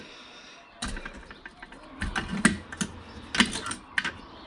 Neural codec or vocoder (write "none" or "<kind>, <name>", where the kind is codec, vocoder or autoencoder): none